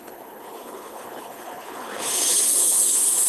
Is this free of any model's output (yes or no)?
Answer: no